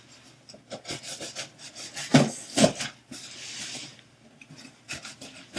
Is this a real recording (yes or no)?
yes